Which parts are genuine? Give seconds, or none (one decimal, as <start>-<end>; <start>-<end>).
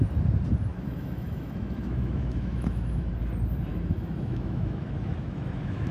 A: 0.0-0.7; 3.1-3.7